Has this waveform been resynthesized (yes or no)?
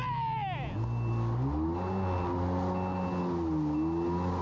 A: no